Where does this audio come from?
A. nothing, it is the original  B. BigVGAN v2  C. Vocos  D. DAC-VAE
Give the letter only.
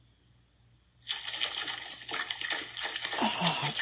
A